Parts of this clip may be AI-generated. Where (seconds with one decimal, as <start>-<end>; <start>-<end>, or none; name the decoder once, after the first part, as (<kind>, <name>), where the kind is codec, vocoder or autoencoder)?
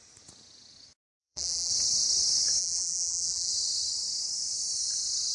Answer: 1.2-1.7 (vocoder, BigVGAN v2); 2.6-3.5